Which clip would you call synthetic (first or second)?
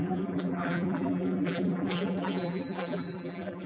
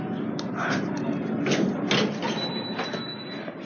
first